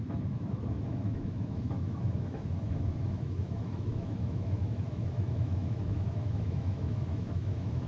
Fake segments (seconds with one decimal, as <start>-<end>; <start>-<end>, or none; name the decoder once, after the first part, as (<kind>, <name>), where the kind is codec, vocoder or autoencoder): 0.0-7.9 (autoencoder, DAC-VAE)